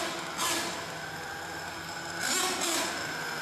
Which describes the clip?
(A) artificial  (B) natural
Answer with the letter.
B